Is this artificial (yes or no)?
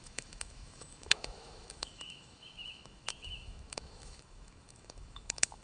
yes